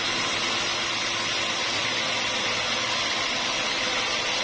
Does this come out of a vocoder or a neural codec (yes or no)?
no